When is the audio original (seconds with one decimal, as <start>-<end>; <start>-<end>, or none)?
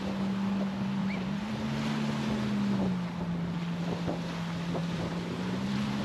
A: 0.0-1.0; 1.5-4.8